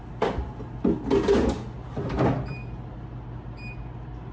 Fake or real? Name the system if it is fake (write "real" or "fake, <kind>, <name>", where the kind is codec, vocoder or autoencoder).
real